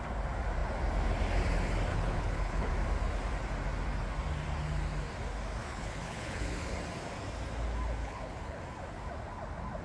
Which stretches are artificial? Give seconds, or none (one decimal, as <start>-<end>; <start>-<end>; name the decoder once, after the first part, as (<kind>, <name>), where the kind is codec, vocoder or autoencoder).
1.9-2.7 (codec, HILCodec); 5.6-6.7; 8.0-8.6